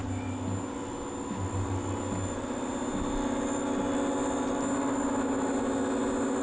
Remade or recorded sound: recorded